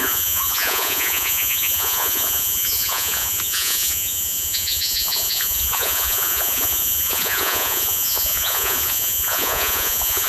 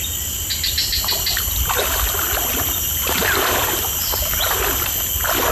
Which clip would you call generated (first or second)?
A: first